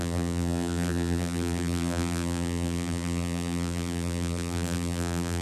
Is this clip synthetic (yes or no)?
yes